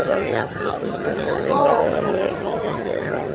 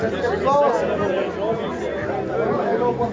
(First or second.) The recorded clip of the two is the second